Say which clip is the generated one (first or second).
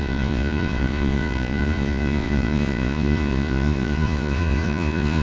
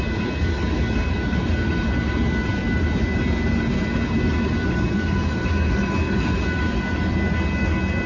first